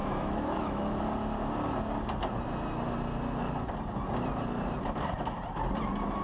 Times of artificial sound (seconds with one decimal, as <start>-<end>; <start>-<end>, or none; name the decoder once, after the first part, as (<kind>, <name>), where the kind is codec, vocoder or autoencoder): 0.0-1.0 (autoencoder, DAC-VAE)